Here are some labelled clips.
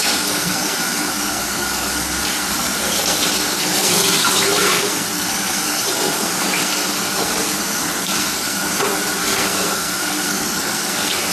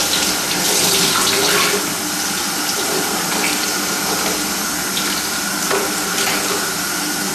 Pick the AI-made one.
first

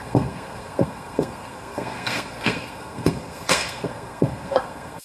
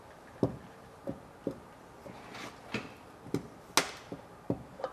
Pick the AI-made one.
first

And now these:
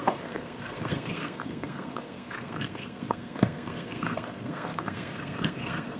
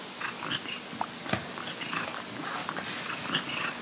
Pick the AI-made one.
first